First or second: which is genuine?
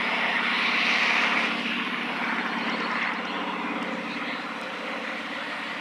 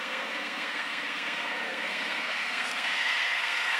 first